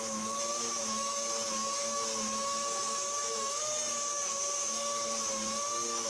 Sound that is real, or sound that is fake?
fake